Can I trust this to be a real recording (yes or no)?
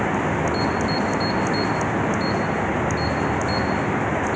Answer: yes